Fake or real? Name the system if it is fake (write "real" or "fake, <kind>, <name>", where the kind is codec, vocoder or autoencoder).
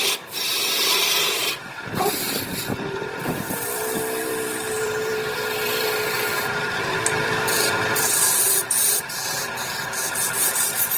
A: fake, vocoder, BigVGAN v2